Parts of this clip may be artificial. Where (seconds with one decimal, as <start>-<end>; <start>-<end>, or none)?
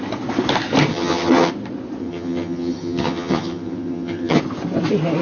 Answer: 0.9-1.5; 2.0-4.4